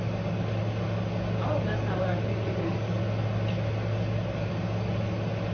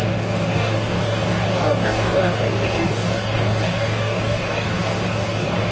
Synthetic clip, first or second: second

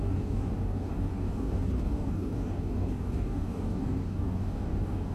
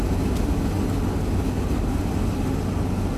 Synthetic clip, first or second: first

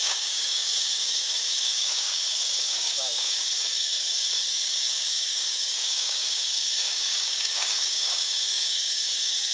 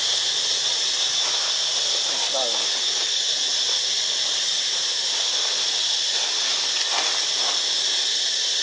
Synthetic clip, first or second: first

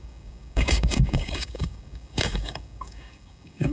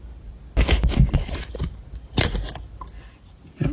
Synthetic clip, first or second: first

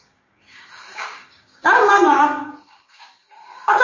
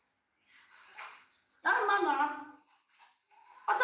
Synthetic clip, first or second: first